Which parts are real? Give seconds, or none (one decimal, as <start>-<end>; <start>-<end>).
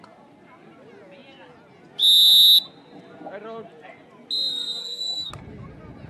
0.0-4.8; 5.3-6.1